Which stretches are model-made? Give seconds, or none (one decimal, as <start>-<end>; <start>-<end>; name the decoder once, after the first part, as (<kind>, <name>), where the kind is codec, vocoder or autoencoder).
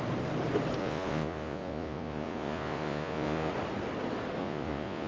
0.8-3.5 (vocoder, Vocos); 4.4-5.1